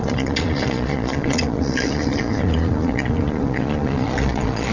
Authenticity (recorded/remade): remade